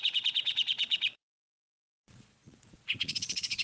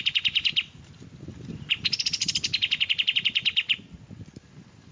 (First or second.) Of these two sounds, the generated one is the first